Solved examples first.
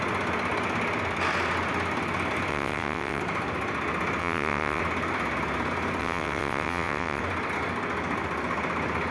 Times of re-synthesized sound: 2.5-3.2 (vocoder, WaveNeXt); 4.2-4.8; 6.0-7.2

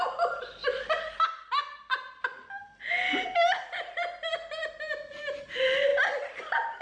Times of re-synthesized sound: none

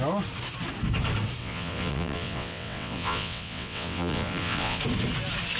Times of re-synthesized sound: 1.4-4.8 (vocoder, WaveNeXt)

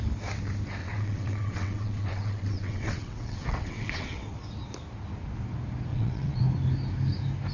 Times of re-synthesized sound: 0.8-4.2 (vocoder, WaveNeXt); 5.9-6.4

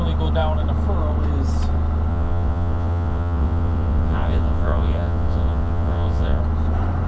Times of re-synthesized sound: 2.1-6.4 (vocoder, WaveNeXt)

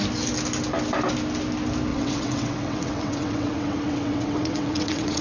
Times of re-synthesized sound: 1.9-5.2 (vocoder, WaveNeXt)

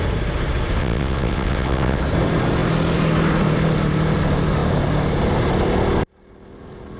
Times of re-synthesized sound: 0.8-2.0 (vocoder, WaveNeXt)

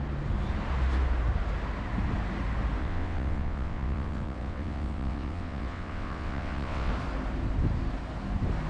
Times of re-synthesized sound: 2.8-6.9 (vocoder, WaveNeXt)